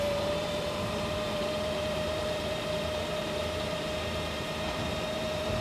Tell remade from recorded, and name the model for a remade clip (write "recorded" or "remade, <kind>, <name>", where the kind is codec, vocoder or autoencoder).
remade, vocoder, BigVGAN v2